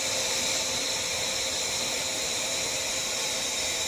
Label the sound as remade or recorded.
recorded